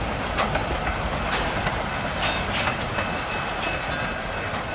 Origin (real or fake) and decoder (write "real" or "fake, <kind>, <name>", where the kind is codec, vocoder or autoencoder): real